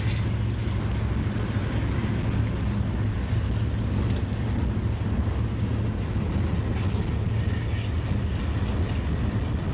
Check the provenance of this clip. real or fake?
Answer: real